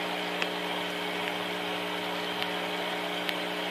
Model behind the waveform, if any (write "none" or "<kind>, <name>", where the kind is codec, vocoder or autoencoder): none